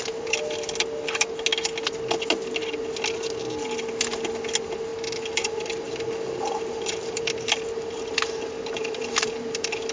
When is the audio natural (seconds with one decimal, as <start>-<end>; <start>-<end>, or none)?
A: 0.0-4.9